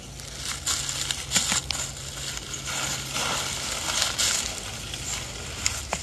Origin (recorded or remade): recorded